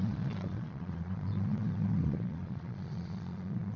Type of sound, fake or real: fake